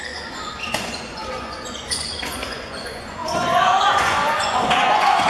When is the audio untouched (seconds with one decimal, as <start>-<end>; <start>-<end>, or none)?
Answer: none